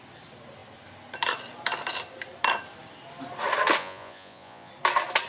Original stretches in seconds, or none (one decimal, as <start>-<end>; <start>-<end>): 0.0-3.8; 4.7-5.3